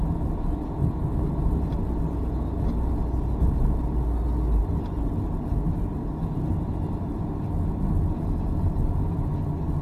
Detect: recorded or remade recorded